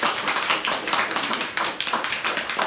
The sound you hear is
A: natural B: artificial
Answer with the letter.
B